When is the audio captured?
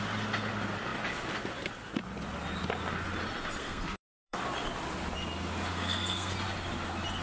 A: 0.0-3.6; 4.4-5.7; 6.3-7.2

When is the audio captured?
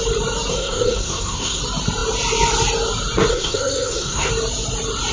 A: 0.0-0.5; 1.6-3.3; 4.3-5.1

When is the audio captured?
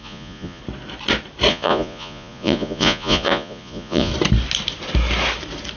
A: 0.6-1.5; 4.1-5.8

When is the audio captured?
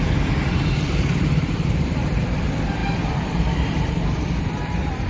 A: none